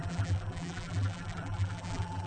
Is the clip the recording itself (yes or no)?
no